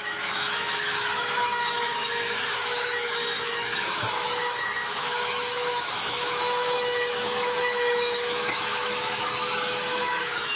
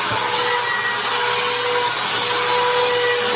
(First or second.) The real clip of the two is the second